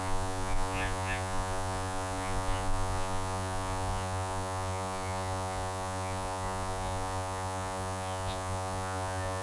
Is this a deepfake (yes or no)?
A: yes